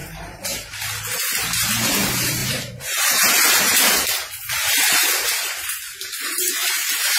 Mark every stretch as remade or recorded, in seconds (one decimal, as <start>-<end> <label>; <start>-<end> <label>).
0.0-0.7 remade; 0.7-2.4 recorded; 2.4-3.3 remade; 3.3-6.6 recorded; 6.6-7.2 remade